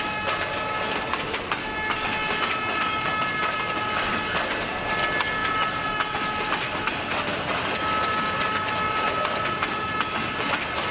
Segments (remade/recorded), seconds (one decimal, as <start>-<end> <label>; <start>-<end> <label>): 0.0-10.9 recorded